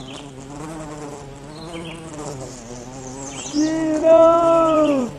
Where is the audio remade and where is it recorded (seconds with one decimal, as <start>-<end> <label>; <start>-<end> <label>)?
0.0-2.1 recorded; 2.1-5.2 remade